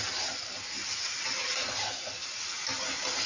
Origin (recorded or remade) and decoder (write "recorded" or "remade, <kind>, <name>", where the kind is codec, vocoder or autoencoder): recorded